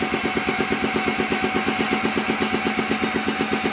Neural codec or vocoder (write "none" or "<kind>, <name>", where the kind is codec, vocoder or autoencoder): none